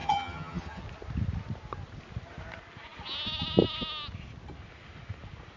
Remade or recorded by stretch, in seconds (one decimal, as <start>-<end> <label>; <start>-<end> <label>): 0.0-0.8 remade; 0.8-5.6 recorded